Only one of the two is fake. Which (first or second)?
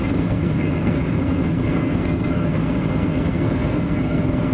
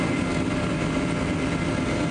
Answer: first